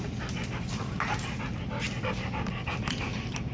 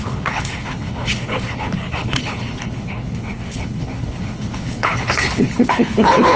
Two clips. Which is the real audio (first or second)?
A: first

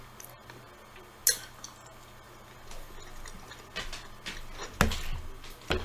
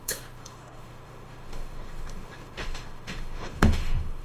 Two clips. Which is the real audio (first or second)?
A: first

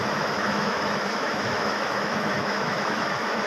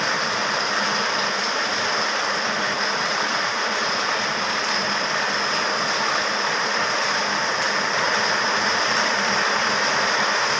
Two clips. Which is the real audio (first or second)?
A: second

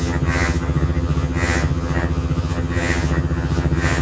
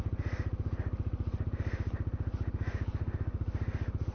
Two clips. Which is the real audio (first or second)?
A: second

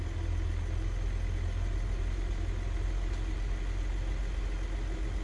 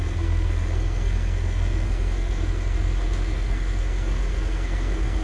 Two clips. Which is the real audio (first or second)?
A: first